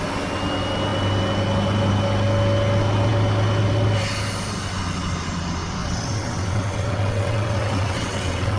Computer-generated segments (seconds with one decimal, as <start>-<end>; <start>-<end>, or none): 5.8-8.6